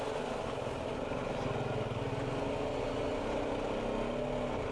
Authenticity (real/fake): real